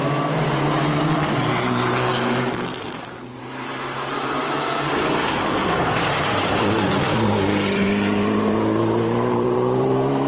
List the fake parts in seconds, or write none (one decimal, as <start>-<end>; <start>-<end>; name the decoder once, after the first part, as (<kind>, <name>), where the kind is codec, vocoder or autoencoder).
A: 5.6-10.3 (vocoder, BigVGAN v2)